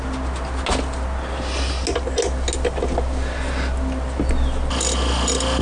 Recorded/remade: recorded